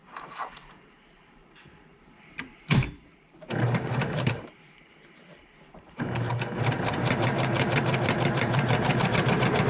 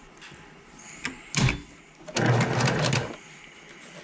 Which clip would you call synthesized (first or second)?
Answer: first